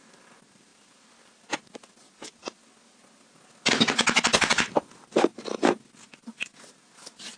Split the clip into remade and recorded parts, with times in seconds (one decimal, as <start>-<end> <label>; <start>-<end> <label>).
0.0-7.4 recorded